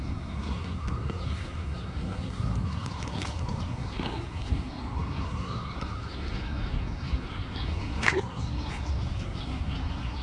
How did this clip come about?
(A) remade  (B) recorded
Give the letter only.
A